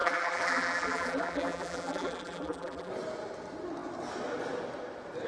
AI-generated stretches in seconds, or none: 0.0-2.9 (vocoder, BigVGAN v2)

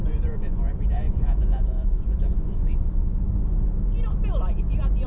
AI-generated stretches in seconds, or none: 0.0-3.1 (vocoder, Vocos)